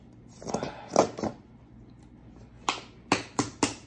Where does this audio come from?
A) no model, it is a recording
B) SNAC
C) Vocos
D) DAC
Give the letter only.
A